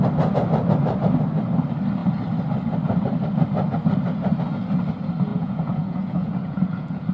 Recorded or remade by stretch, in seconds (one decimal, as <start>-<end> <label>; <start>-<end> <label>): 0.0-5.3 recorded; 5.3-7.1 remade